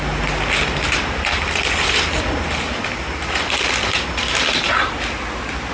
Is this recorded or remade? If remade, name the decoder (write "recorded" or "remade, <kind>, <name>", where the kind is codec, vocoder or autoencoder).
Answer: recorded